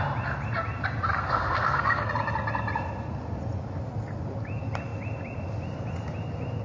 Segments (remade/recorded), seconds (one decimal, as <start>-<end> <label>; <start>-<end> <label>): 0.0-1.1 recorded; 1.1-2.1 remade; 2.1-6.6 recorded